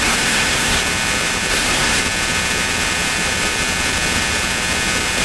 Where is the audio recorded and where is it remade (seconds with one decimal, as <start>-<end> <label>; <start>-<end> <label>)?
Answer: 0.0-0.8 remade; 0.8-1.5 recorded; 1.5-2.0 remade; 2.0-5.2 recorded

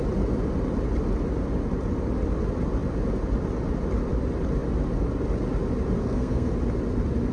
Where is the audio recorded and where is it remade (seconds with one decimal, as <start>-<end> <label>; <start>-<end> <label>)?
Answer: 0.0-6.0 recorded; 6.0-6.5 remade; 6.5-7.3 recorded

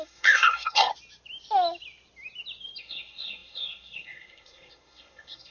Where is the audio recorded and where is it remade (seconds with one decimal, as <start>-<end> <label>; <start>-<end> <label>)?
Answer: 0.0-0.9 remade; 0.9-2.8 recorded; 2.8-5.5 remade

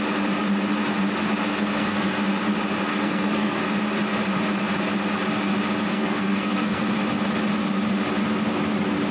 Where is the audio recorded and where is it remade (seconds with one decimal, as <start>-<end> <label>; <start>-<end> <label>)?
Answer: 0.0-1.4 recorded; 1.4-2.2 remade; 2.2-2.9 recorded; 2.9-3.6 remade; 3.6-5.9 recorded; 5.9-6.8 remade; 6.8-9.1 recorded

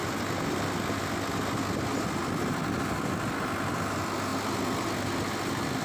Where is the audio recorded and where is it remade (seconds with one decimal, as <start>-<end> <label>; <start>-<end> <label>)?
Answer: 0.0-5.8 recorded

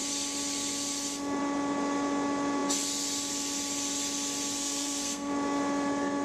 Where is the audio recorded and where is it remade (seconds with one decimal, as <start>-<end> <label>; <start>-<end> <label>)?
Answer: 0.0-4.6 recorded; 4.6-5.3 remade; 5.3-6.2 recorded